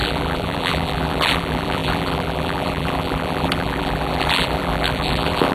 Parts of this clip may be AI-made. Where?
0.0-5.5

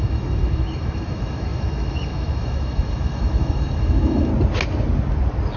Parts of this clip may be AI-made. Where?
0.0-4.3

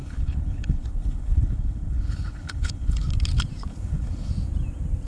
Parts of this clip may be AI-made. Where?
0.0-3.1; 3.7-4.3

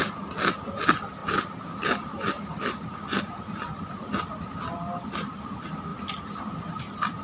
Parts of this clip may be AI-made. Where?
none